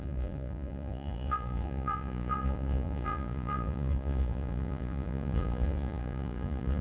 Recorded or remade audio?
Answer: remade